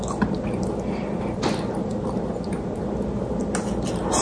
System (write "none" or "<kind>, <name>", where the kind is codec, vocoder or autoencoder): none